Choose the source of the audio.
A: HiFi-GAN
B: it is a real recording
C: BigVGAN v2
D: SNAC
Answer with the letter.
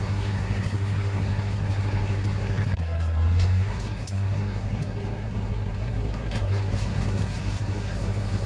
D